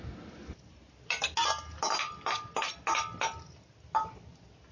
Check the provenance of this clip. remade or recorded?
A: recorded